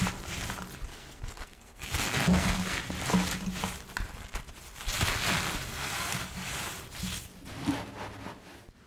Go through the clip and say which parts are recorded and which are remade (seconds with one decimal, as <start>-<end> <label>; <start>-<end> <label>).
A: 0.0-0.9 recorded; 0.9-2.9 remade; 2.9-5.7 recorded; 5.7-6.5 remade; 6.5-8.9 recorded